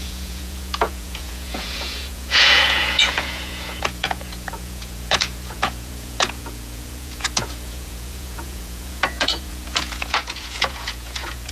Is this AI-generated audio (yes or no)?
yes